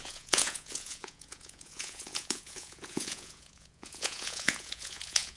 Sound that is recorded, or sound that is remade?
remade